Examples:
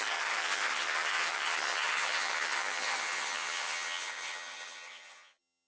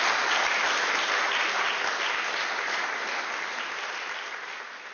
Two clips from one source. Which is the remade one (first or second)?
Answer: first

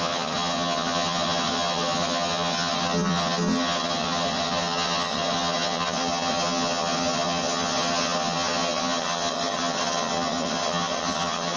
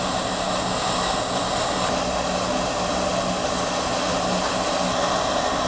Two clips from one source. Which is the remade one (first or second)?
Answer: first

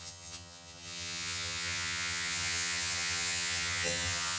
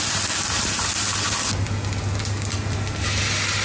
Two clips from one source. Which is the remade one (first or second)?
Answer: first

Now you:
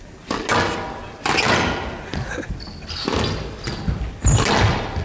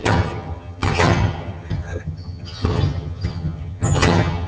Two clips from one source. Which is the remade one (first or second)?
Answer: second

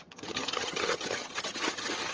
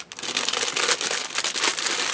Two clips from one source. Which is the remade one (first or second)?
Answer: first